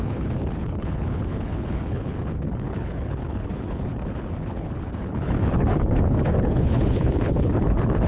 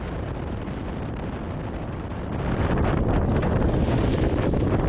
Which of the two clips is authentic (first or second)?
second